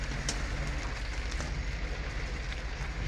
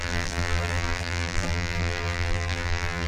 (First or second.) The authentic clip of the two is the first